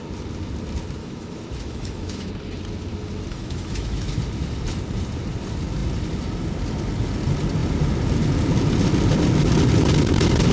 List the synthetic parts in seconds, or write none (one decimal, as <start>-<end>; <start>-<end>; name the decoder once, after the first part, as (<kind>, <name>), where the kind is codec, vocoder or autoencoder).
1.0-2.3 (autoencoder, DAC-VAE); 3.3-4.2